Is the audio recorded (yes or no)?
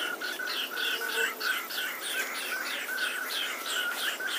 yes